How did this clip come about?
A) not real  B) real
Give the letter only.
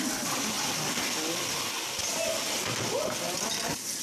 B